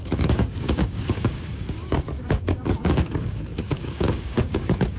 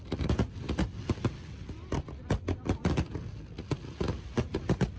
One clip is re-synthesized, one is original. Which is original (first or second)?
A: second